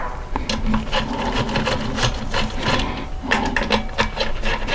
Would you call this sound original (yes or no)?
yes